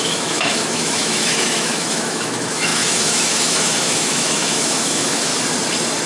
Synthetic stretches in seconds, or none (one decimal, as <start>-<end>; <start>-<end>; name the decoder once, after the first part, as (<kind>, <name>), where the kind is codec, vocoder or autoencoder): 0.0-5.3 (autoencoder, DAC-VAE)